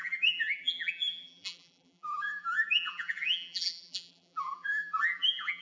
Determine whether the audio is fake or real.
fake